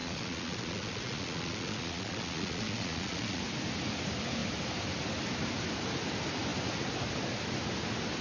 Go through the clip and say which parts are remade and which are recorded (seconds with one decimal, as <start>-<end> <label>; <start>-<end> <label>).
0.0-3.4 remade; 3.4-8.2 recorded